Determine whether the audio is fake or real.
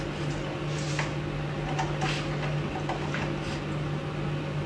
real